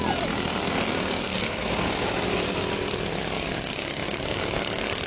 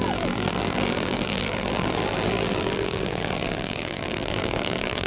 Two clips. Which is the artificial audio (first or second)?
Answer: second